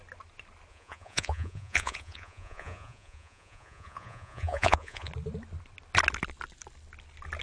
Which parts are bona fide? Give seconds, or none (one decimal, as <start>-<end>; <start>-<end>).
0.0-0.7; 5.1-7.4